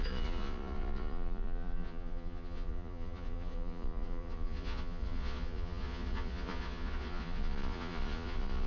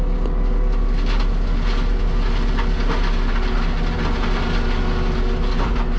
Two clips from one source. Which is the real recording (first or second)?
second